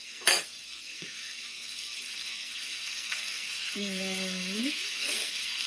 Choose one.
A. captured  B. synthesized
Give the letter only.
B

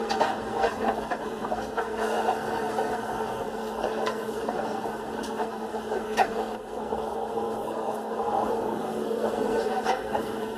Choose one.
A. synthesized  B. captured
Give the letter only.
A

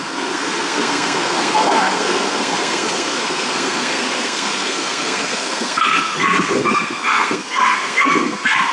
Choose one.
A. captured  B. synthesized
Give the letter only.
B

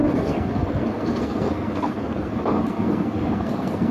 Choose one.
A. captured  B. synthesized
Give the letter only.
B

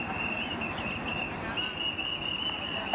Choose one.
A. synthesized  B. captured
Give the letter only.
B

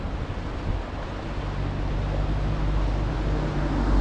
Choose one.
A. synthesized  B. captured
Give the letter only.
B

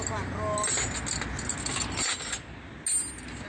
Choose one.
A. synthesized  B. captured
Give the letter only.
B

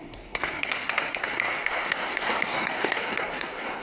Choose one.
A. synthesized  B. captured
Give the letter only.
A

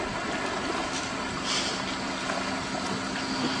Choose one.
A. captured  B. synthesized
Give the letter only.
A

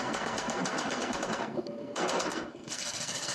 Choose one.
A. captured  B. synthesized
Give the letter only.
B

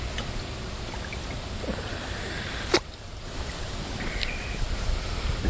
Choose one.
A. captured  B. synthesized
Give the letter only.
A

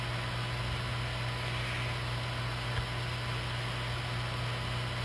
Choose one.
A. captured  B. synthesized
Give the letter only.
A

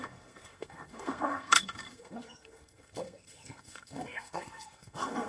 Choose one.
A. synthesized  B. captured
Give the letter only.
A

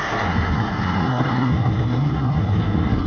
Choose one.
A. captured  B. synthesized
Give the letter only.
B